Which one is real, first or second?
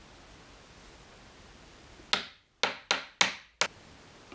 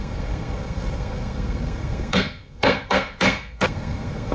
first